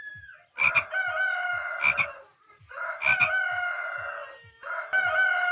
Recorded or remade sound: recorded